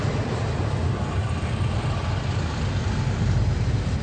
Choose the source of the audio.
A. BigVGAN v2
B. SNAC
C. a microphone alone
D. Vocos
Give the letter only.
C